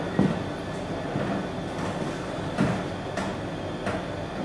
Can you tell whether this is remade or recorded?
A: recorded